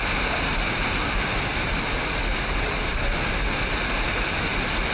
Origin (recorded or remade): recorded